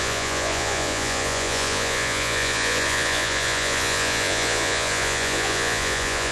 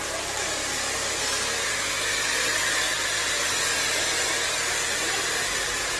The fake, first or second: first